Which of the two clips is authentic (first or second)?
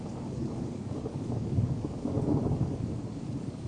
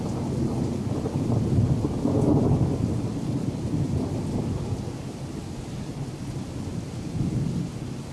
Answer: second